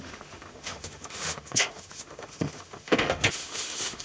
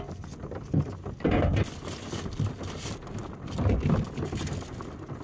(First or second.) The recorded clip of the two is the second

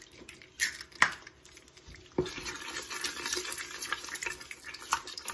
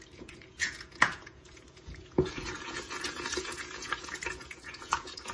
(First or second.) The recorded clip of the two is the first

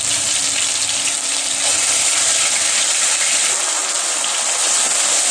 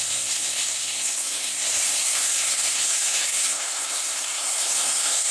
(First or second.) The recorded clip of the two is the first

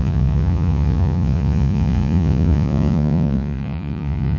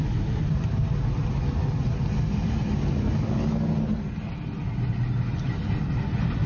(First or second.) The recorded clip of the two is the second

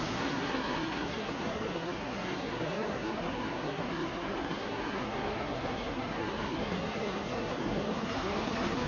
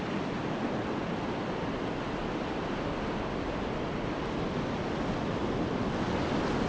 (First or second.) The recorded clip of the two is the second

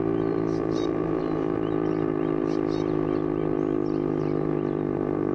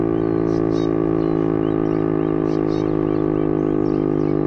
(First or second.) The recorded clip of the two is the second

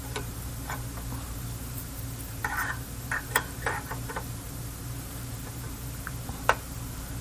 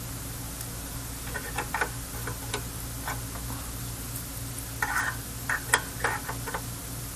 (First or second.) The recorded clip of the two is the second